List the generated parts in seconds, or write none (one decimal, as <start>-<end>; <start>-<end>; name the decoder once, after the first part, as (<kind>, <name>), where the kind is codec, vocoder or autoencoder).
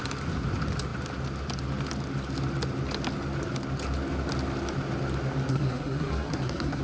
5.5-6.8 (codec, SNAC)